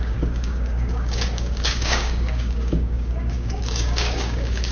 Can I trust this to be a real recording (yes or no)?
no